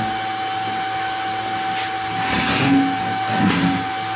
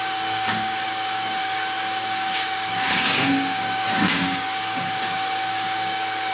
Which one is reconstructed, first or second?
second